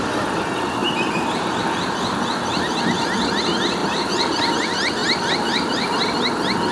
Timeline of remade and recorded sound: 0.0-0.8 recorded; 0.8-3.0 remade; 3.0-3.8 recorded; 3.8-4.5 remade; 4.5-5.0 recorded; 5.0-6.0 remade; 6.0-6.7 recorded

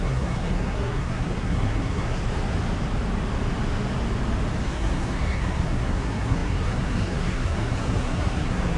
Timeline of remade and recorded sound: 0.0-2.2 remade; 2.2-4.6 recorded; 4.6-8.8 remade